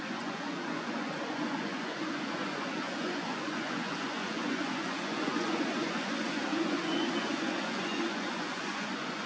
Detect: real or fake fake